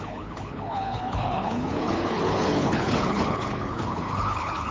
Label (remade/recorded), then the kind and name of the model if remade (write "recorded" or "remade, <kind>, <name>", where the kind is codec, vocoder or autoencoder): remade, codec, HILCodec